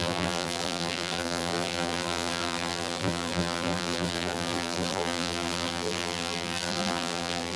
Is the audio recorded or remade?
remade